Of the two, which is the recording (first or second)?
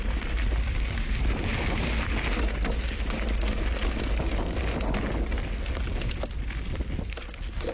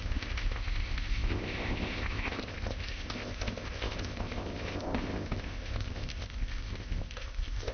first